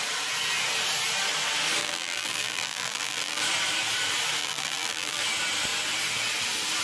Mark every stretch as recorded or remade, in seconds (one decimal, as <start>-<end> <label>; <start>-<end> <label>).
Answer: 0.0-1.8 recorded; 1.8-3.4 remade; 3.4-4.4 recorded; 4.4-5.2 remade; 5.2-6.8 recorded